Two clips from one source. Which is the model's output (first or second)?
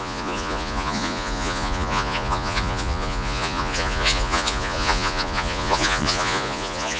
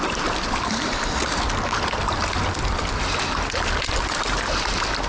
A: first